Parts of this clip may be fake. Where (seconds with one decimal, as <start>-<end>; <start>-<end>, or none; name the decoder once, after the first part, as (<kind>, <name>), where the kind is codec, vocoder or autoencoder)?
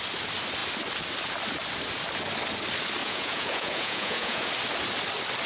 3.0-4.5 (vocoder, Vocos)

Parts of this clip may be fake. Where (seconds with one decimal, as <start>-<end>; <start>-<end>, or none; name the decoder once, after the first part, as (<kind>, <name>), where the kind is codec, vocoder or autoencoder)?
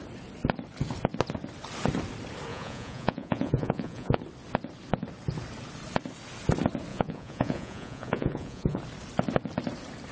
2.5-4.2 (vocoder, Vocos); 6.9-8.8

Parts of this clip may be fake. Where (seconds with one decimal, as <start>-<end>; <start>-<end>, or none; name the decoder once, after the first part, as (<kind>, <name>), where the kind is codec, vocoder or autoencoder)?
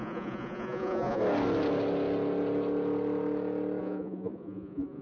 0.0-1.2 (vocoder, Vocos); 3.8-5.0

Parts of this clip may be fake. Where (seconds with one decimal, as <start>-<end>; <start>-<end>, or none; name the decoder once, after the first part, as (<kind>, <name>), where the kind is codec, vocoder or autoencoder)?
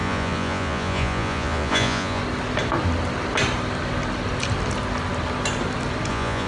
0.0-2.2 (vocoder, Vocos); 6.1-6.5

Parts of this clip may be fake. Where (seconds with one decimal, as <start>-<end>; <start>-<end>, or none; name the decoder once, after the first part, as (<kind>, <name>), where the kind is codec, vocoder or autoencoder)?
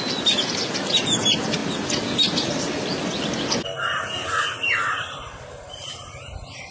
none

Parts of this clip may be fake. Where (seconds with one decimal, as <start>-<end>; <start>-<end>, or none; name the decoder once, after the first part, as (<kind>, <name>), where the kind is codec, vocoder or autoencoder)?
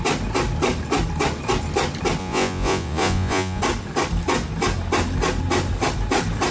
2.2-3.6 (vocoder, Vocos)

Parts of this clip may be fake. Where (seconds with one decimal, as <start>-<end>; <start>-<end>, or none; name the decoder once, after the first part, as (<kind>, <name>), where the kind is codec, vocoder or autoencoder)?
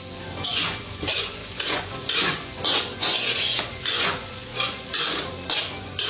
0.0-6.1 (vocoder, Vocos)